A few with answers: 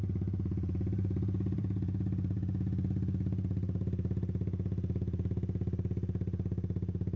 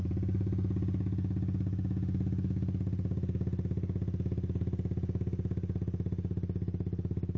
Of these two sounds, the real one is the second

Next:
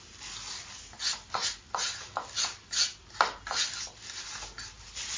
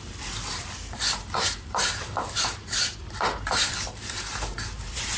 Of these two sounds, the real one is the first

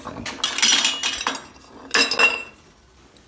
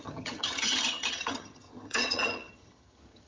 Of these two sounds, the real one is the first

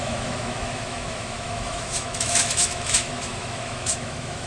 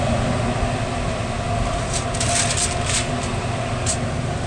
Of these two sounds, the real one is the second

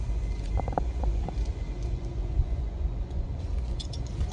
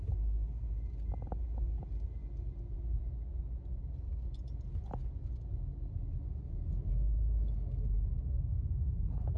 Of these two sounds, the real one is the second